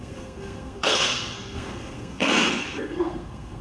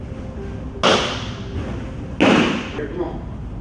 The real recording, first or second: second